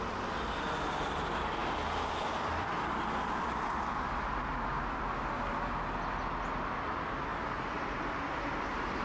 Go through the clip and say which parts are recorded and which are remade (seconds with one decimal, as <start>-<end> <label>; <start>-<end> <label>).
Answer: 0.0-1.6 recorded; 1.6-5.0 remade; 5.0-9.0 recorded